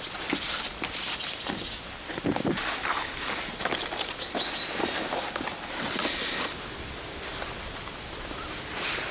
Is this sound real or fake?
real